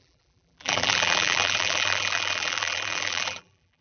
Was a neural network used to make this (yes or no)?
yes